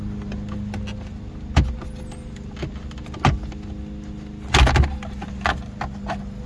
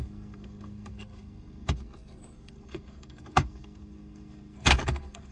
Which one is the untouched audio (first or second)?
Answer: first